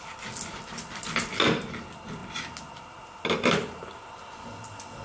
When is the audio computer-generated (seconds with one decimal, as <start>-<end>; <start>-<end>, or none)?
none

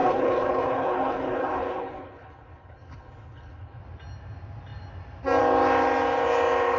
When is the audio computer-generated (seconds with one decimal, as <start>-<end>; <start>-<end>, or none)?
0.0-3.8